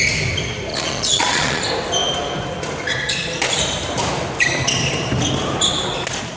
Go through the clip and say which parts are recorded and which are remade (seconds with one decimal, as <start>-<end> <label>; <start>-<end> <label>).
0.0-0.7 recorded; 0.7-1.6 remade; 1.6-6.4 recorded